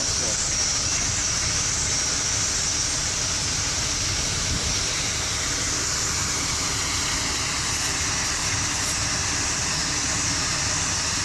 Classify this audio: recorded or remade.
recorded